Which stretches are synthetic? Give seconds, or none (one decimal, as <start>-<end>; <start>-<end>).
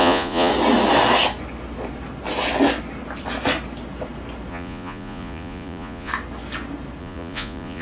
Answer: 0.0-0.5; 4.5-6.1; 7.0-7.8